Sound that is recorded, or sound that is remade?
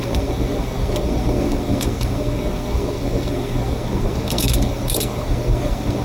remade